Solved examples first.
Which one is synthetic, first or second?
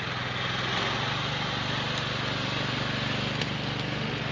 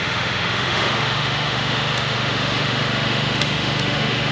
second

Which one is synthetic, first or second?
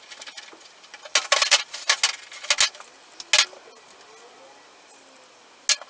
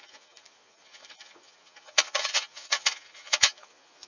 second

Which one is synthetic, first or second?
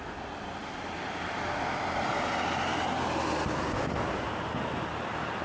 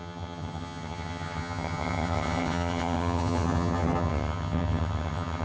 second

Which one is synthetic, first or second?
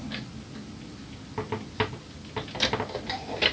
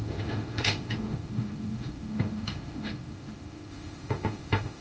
second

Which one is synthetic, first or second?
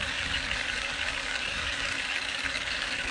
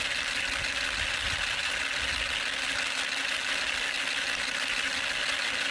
first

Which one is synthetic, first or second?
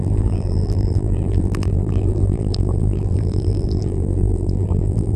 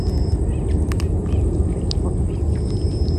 first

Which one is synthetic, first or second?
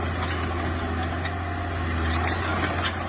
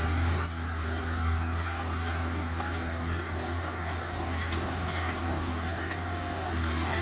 second